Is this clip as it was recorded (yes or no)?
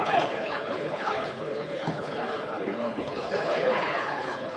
no